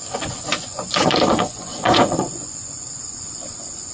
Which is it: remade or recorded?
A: remade